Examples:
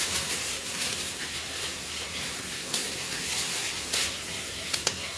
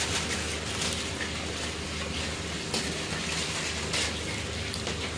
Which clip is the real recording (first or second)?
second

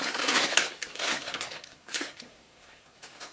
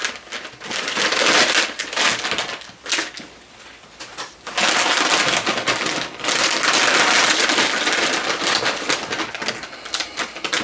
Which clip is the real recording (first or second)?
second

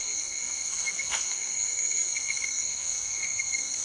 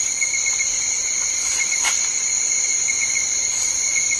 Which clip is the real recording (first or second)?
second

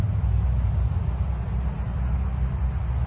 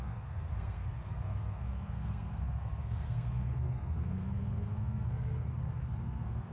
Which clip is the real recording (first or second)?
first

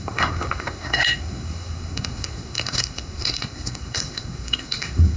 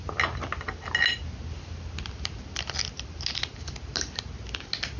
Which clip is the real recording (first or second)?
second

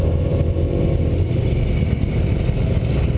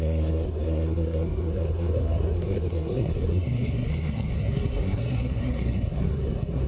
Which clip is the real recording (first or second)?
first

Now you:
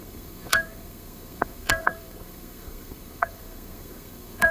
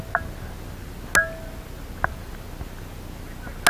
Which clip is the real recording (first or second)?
second